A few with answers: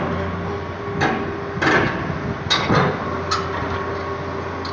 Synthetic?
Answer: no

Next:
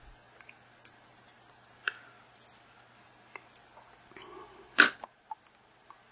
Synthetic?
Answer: no